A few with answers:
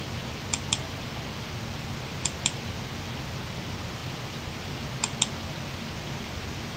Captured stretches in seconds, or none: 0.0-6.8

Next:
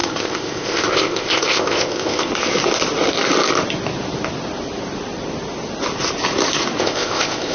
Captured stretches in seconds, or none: 2.3-6.8

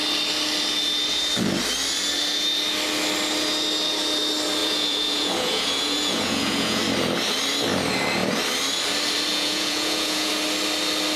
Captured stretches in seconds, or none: 0.0-4.6; 6.8-9.3; 10.3-11.2